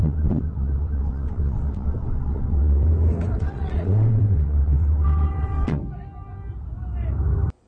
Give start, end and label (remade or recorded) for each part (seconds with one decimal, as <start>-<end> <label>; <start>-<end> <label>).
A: 0.0-2.9 remade; 2.9-3.4 recorded; 3.4-5.8 remade; 5.8-7.7 recorded